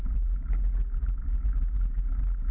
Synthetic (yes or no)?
no